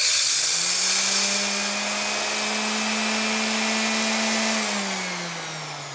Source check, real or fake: real